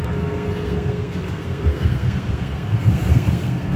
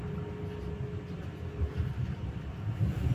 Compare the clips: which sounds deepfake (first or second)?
first